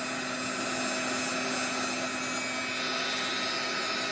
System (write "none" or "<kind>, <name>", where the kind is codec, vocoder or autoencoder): none